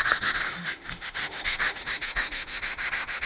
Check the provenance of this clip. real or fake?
fake